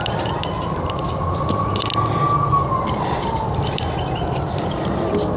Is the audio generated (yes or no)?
no